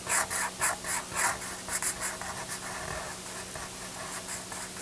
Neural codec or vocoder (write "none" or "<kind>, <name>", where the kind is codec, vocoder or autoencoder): none